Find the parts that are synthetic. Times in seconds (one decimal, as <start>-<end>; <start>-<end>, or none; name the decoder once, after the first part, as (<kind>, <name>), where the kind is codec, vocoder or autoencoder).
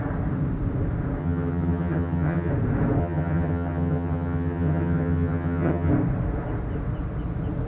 1.2-2.5 (vocoder, HiFi-GAN); 3.0-5.9